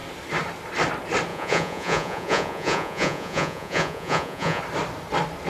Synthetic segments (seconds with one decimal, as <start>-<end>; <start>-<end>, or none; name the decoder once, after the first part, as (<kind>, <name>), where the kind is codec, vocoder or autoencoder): 1.3-4.6 (vocoder, Vocos)